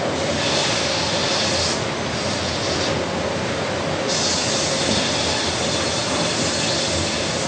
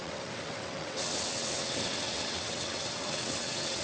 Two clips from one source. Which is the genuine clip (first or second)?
first